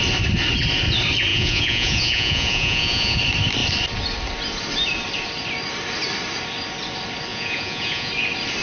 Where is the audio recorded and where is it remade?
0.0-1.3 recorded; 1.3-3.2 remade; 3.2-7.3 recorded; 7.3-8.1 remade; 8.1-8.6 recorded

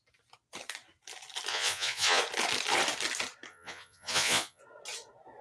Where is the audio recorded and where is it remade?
0.0-1.5 recorded; 1.5-2.2 remade; 2.2-3.5 recorded; 3.5-4.6 remade; 4.6-5.4 recorded

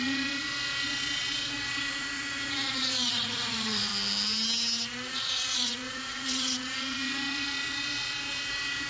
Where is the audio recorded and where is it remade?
0.0-3.9 remade; 3.9-5.1 recorded; 5.1-8.9 remade

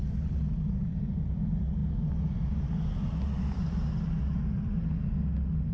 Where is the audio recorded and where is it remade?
0.0-5.7 recorded